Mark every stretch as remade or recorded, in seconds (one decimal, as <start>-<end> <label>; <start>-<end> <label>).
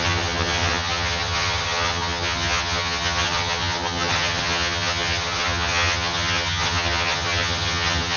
0.0-8.2 remade